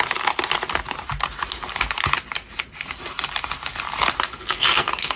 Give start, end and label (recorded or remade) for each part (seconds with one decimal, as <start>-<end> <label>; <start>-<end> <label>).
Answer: 0.0-4.3 recorded; 4.3-5.2 remade

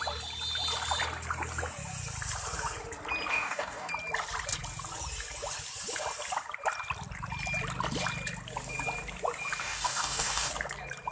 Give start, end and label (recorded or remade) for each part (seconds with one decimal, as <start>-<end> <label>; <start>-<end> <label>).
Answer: 0.0-3.3 recorded; 3.3-3.9 remade; 3.9-9.6 recorded; 9.6-10.5 remade; 10.5-11.1 recorded

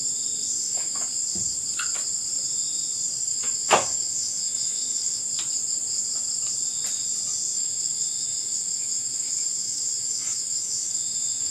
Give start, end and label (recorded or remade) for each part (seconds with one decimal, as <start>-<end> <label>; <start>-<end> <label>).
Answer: 0.0-0.6 recorded; 0.6-1.1 remade; 1.1-3.3 recorded; 3.3-5.2 remade; 5.2-7.5 recorded; 7.5-11.5 remade

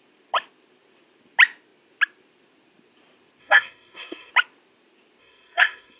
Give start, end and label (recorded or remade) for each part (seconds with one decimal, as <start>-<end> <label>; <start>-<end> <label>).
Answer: 0.0-3.4 recorded; 3.4-4.3 remade; 4.3-5.2 recorded; 5.2-6.0 remade

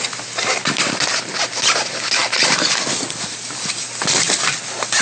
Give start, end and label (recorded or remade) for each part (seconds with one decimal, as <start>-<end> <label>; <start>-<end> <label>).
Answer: 0.0-5.0 recorded